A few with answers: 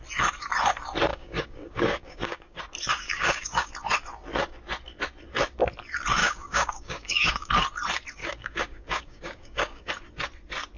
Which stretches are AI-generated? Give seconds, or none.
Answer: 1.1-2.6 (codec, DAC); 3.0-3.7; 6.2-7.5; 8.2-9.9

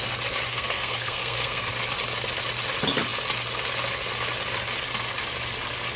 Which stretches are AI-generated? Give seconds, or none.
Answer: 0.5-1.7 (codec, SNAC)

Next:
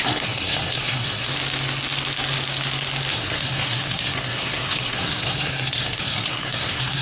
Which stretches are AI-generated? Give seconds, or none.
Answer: 0.0-1.3 (codec, SNAC); 3.1-7.0